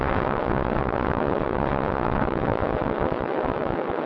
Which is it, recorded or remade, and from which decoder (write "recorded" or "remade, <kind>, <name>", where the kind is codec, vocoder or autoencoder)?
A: remade, vocoder, WaveNeXt